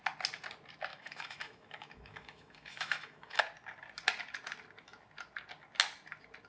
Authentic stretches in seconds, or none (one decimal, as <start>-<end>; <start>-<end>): 0.0-0.9; 3.4-6.5